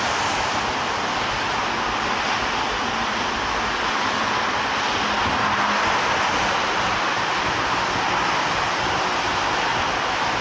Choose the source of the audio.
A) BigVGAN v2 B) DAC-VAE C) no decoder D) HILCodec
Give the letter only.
C